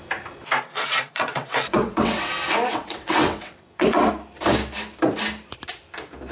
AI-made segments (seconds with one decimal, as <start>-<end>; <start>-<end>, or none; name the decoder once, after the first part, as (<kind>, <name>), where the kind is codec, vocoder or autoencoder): 0.7-2.3 (vocoder, WaveNeXt); 2.7-4.1